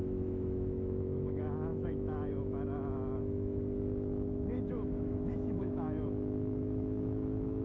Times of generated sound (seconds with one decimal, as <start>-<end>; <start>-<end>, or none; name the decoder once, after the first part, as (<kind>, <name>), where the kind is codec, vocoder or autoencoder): 0.0-7.6 (autoencoder, DAC-VAE)